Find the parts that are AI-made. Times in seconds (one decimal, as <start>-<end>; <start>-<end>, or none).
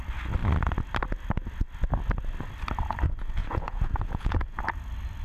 3.4-4.6